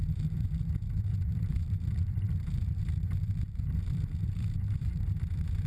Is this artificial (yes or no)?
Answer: yes